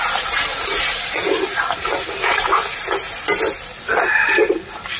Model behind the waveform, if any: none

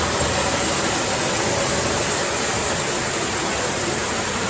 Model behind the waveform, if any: none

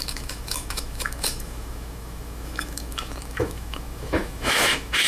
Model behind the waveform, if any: autoencoder, DAC-VAE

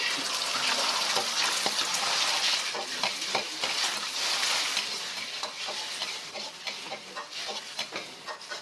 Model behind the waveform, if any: none